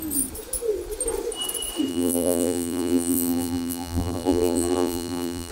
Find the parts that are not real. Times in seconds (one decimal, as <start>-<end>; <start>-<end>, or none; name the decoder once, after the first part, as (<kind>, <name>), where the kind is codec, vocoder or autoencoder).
1.9-5.5 (vocoder, BigVGAN v2)